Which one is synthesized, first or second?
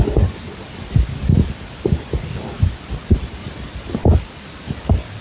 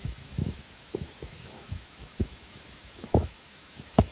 second